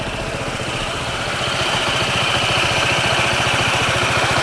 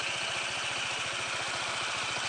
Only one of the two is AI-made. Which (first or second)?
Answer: first